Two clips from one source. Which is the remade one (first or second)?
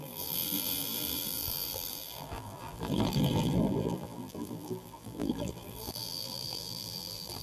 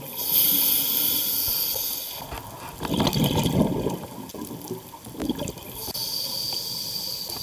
first